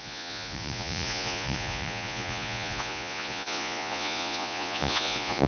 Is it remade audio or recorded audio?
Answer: remade